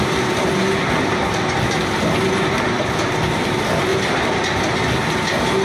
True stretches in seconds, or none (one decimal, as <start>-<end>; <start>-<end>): 0.0-3.9; 4.6-5.6